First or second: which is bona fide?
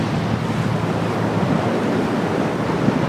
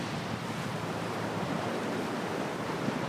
first